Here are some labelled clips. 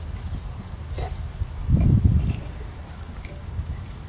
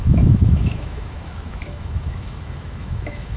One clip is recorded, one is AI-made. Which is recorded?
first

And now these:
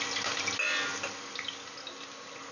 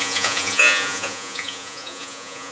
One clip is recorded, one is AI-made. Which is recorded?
first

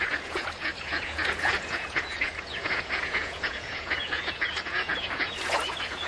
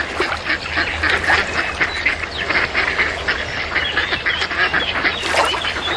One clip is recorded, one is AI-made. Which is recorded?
second